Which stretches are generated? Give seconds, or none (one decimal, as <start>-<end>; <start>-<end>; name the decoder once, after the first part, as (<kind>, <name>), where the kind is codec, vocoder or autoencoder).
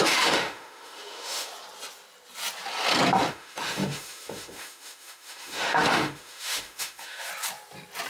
0.0-1.5 (autoencoder, DAC-VAE); 3.3-7.3